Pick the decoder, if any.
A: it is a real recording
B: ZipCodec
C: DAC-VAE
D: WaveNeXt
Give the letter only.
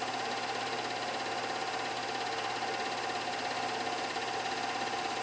A